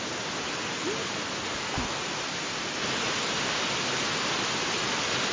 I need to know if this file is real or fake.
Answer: real